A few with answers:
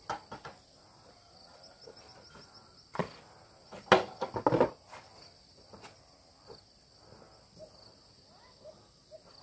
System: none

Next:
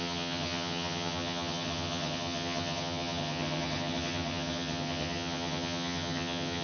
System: vocoder, HiFi-GAN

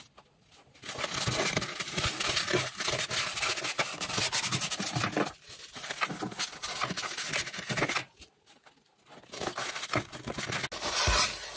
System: none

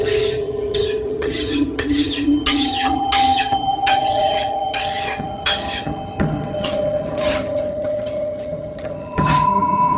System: vocoder, HiFi-GAN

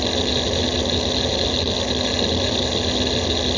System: none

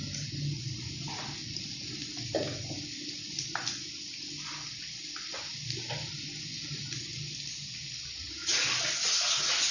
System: none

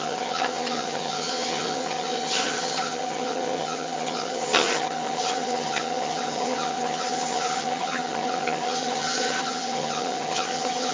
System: vocoder, HiFi-GAN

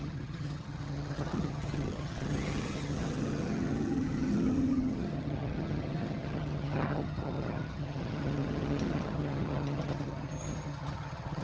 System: vocoder, HiFi-GAN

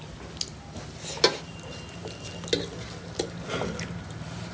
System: none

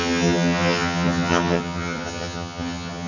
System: vocoder, HiFi-GAN